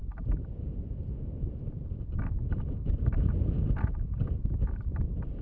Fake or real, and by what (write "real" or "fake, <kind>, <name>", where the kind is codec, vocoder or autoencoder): real